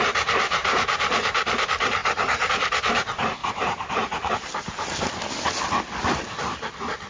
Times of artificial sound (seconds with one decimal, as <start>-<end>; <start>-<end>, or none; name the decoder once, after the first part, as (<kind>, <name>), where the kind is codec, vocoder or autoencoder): 0.6-1.6 (vocoder, BigVGAN v2); 3.4-5.1